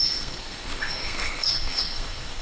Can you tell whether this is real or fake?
fake